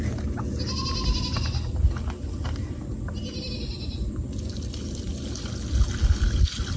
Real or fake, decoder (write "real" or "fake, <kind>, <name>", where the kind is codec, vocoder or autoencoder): real